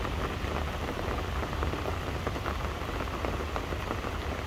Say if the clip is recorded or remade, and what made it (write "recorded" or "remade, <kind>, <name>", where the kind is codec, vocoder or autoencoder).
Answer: remade, vocoder, BigVGAN v2